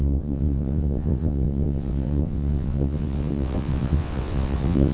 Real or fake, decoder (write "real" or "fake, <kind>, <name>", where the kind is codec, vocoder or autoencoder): fake, vocoder, WaveNeXt